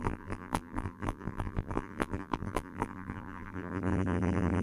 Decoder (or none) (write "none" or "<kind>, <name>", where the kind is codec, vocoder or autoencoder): vocoder, BigVGAN v2